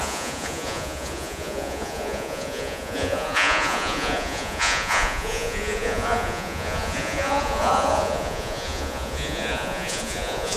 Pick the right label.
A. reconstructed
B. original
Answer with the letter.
A